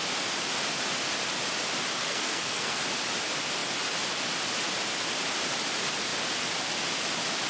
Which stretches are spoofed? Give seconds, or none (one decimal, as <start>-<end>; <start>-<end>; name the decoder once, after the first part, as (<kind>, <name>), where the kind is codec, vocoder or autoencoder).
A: 2.0-2.8 (codec, SNAC)